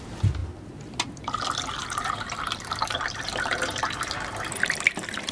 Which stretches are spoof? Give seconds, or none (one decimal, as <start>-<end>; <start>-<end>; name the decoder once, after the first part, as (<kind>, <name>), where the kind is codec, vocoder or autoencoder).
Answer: 1.8-5.3 (vocoder, BigVGAN v2)